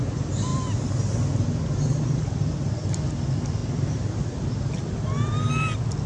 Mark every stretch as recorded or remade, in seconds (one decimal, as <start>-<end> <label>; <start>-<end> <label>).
0.0-6.1 recorded